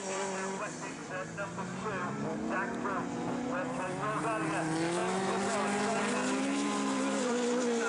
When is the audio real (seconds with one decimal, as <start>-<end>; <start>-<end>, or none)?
0.0-7.9